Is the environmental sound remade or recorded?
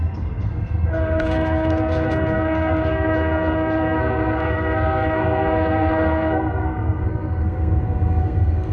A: remade